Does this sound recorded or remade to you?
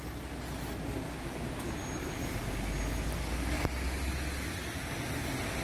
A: recorded